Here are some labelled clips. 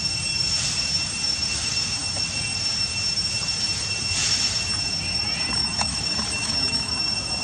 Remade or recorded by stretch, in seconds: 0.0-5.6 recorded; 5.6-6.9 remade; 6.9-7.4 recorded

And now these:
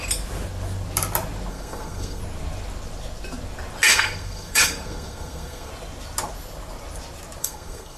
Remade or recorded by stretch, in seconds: 0.0-1.5 recorded; 1.5-2.2 remade; 2.2-3.9 recorded; 3.9-5.7 remade; 5.7-7.4 recorded; 7.4-8.0 remade

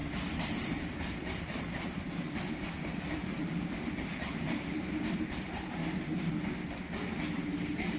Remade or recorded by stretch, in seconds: 0.0-5.8 remade; 5.8-7.4 recorded; 7.4-8.0 remade

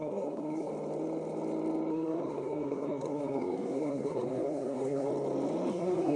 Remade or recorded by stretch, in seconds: 0.0-0.7 remade; 0.7-1.9 recorded; 1.9-5.1 remade; 5.1-5.7 recorded; 5.7-6.2 remade

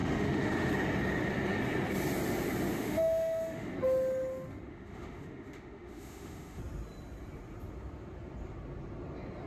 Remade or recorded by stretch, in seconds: 0.0-0.7 remade; 0.7-2.7 recorded; 2.7-3.7 remade; 3.7-4.7 recorded; 4.7-6.6 remade; 6.6-9.5 recorded